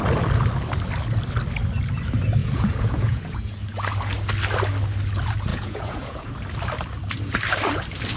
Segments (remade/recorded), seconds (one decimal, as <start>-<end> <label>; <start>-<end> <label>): 0.0-2.4 recorded; 2.4-3.5 remade; 3.5-5.5 recorded; 5.5-6.3 remade; 6.3-8.2 recorded